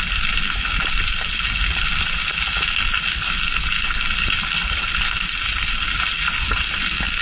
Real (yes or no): yes